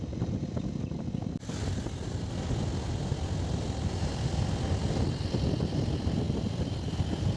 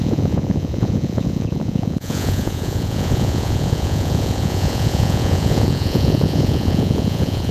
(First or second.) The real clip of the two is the first